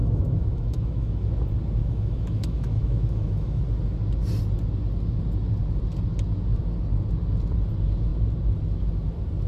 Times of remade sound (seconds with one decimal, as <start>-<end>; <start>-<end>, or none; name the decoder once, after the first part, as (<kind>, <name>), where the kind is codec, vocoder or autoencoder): 0.0-1.3 (autoencoder, DAC-VAE); 1.8-3.6